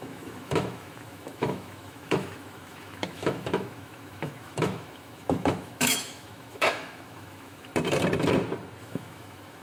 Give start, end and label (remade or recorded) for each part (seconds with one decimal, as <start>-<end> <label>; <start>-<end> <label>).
0.0-7.7 remade; 7.7-8.8 recorded; 8.8-9.6 remade